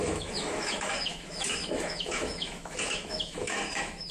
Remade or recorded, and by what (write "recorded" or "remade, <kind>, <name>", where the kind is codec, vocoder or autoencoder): remade, autoencoder, DAC-VAE